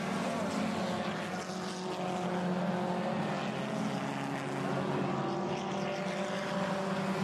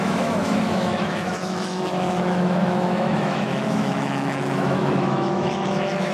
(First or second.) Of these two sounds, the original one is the first